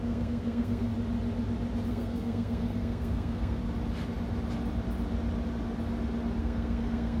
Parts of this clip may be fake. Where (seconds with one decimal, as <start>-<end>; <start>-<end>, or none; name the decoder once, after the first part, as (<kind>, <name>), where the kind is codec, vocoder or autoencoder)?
0.0-0.9 (codec, SNAC); 1.9-3.6; 6.4-7.2